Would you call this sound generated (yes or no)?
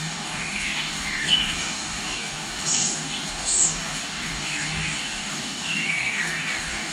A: yes